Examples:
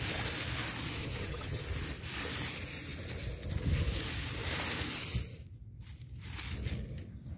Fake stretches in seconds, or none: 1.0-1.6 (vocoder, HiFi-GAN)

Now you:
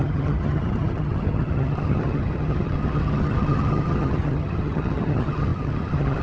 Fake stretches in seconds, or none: 0.0-6.2 (vocoder, HiFi-GAN)

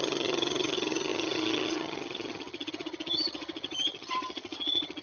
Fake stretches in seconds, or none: 0.0-5.0 (vocoder, HiFi-GAN)

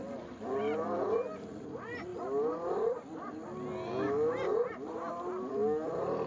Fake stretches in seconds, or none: none

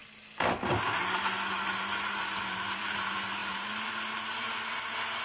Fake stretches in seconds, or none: none

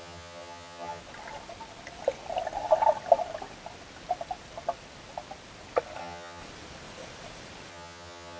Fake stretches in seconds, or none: 0.0-1.0 (vocoder, HiFi-GAN); 6.0-6.4; 7.7-8.4